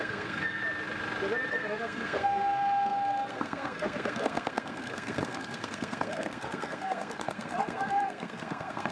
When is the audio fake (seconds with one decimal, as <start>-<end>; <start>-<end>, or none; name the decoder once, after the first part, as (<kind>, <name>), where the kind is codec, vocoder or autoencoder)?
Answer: 0.0-0.6 (codec, SNAC); 1.5-8.9